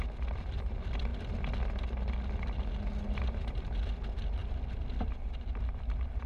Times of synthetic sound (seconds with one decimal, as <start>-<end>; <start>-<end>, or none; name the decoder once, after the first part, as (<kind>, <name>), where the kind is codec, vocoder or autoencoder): none